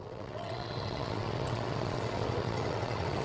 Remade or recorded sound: remade